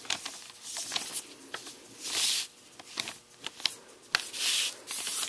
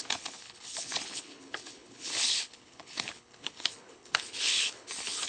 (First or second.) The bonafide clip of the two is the first